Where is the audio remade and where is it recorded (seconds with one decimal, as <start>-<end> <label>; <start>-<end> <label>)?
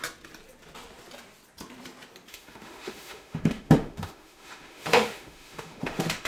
0.0-2.3 recorded; 2.3-6.3 remade